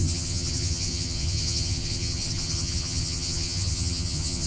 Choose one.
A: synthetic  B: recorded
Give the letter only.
A